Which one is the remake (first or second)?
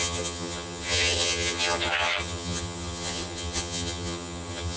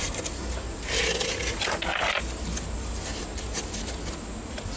first